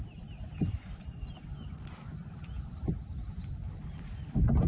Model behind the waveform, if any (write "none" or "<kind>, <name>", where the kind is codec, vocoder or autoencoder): none